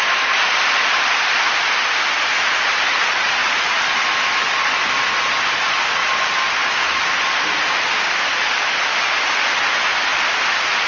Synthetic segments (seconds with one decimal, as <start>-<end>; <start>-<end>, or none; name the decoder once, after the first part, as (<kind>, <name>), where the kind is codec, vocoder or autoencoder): none